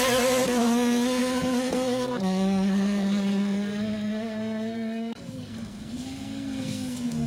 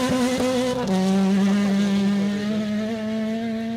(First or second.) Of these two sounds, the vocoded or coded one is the first